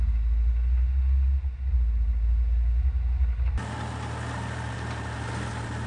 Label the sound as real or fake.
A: real